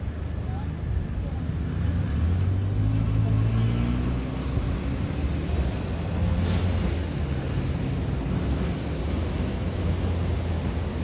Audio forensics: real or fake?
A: real